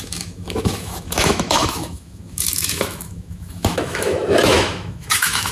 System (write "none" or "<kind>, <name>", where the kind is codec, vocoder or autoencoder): autoencoder, DAC-VAE